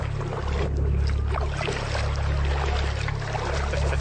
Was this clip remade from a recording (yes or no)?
no